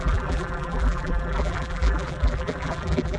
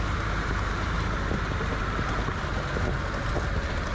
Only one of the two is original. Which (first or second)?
second